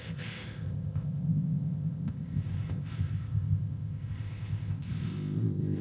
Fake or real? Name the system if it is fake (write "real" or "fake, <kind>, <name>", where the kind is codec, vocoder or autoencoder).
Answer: fake, codec, ZipCodec